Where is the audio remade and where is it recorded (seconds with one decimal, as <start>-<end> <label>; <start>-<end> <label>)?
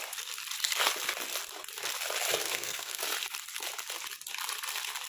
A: 0.0-2.4 recorded; 2.4-3.0 remade; 3.0-5.1 recorded